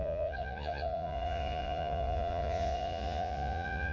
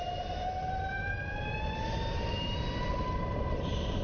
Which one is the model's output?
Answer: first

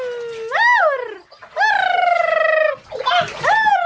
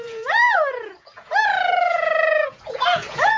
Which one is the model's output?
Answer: second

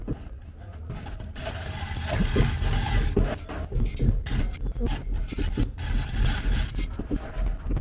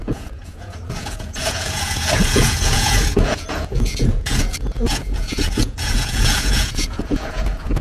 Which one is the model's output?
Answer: second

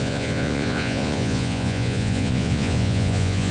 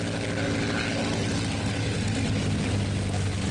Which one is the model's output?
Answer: first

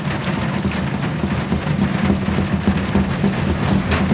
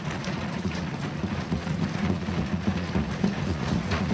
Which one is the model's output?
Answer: second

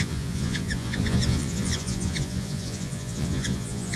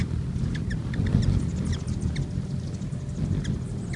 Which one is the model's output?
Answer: first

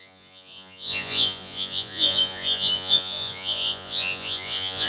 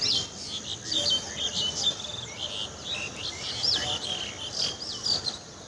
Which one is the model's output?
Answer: first